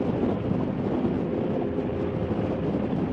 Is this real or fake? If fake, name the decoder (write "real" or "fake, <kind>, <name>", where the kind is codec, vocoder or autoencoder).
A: real